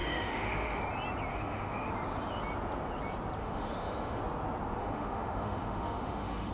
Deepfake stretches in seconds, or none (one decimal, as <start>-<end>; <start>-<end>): 0.0-0.8; 1.3-1.9; 3.4-4.2; 4.8-6.5

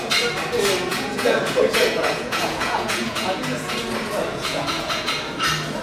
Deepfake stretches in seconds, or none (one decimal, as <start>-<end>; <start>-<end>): 0.9-3.8; 4.3-5.1

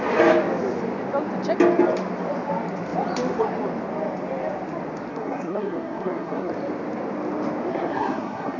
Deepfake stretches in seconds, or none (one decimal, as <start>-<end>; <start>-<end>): 5.1-6.5; 7.7-8.6

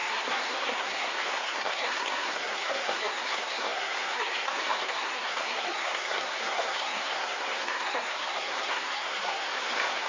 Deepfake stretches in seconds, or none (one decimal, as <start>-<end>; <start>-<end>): 0.0-10.1

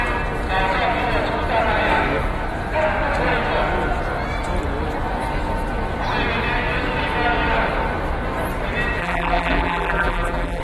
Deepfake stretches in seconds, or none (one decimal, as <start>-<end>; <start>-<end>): 9.0-10.6

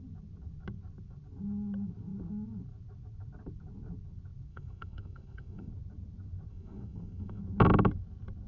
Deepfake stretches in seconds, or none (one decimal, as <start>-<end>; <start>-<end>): 4.5-5.7; 6.5-7.4

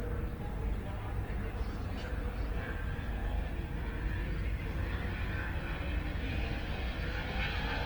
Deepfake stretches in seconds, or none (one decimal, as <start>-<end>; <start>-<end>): 3.2-4.1